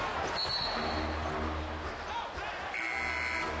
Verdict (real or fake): real